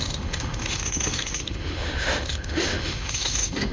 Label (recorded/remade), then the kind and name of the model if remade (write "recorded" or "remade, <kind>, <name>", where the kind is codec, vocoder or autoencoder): remade, autoencoder, DAC-VAE